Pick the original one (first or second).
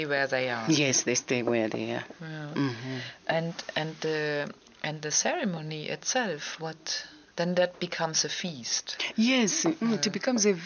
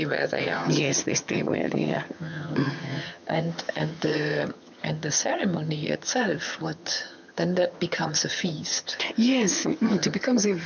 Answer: first